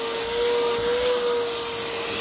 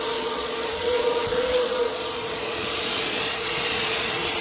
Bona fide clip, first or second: first